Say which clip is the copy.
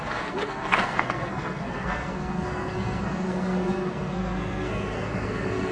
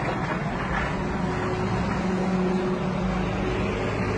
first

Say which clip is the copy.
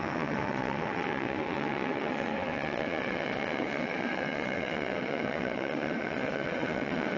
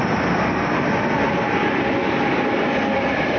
first